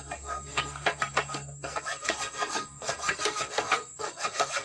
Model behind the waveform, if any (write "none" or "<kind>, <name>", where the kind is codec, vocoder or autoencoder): codec, SNAC